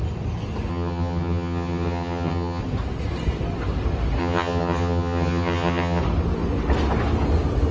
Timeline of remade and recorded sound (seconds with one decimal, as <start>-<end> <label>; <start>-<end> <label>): 0.0-0.7 recorded; 0.7-2.6 remade; 2.6-4.2 recorded; 4.2-6.0 remade; 6.0-7.7 recorded